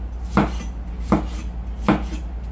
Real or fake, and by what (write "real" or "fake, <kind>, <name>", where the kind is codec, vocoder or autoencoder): real